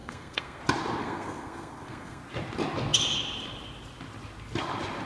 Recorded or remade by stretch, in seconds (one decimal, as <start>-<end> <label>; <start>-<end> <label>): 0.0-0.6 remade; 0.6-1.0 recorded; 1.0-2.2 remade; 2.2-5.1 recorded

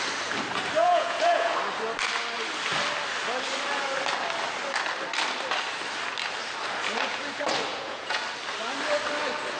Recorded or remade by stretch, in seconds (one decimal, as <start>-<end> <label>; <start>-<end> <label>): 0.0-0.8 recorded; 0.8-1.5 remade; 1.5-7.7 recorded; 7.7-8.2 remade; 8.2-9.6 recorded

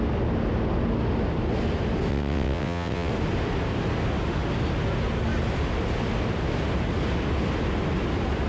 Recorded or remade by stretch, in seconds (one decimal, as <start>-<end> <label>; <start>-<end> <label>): 0.0-2.1 recorded; 2.1-3.1 remade; 3.1-8.5 recorded